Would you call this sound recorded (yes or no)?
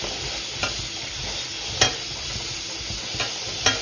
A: yes